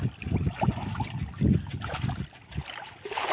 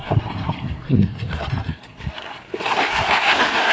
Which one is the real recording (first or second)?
first